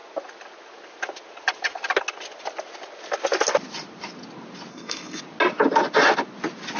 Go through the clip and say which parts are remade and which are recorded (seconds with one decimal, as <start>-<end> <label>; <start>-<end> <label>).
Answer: 0.0-4.7 recorded; 4.7-5.2 remade; 5.2-6.8 recorded

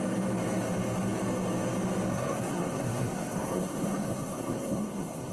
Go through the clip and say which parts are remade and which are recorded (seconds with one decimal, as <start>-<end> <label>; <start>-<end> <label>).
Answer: 0.0-2.1 recorded; 2.1-5.3 remade

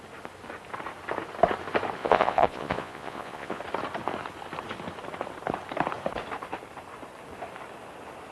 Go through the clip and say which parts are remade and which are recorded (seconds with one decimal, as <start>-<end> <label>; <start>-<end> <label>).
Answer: 0.0-2.0 recorded; 2.0-3.6 remade; 3.6-8.3 recorded

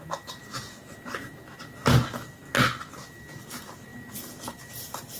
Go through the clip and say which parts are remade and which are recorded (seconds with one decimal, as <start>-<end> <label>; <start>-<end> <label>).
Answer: 0.0-0.4 remade; 0.4-3.5 recorded; 3.5-3.9 remade; 3.9-4.5 recorded; 4.5-5.2 remade